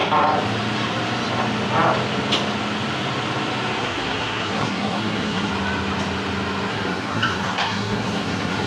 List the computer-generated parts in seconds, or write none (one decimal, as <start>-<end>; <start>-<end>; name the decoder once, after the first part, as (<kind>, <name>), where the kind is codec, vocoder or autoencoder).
3.8-5.5 (codec, SNAC); 6.7-8.7